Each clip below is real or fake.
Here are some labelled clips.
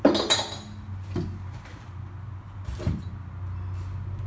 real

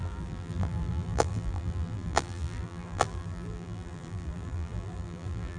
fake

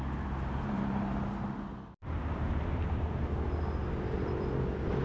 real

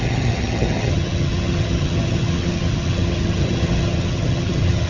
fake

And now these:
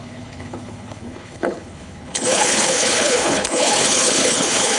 fake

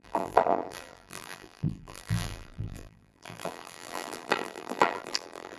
fake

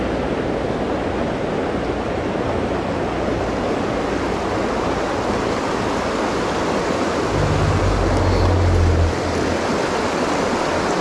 real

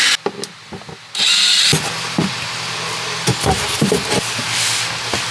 real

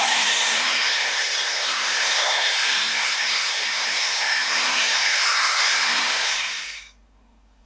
fake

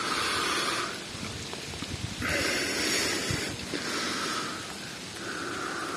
real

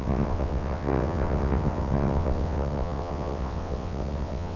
fake